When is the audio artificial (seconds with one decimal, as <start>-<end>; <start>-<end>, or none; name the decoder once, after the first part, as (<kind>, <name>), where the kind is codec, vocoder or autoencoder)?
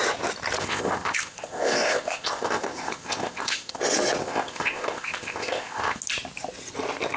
0.6-3.8 (codec, ZipCodec); 4.2-6.0